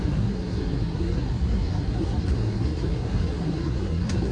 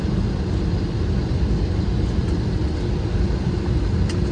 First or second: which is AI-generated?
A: first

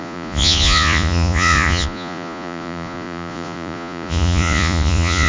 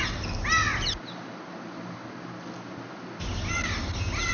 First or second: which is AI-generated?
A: first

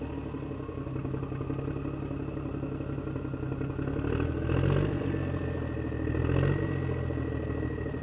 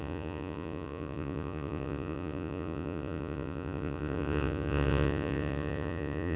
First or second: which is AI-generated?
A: second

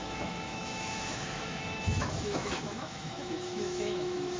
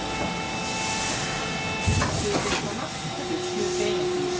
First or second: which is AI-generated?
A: first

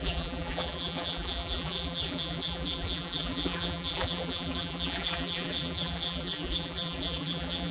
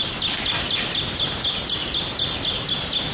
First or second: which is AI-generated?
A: first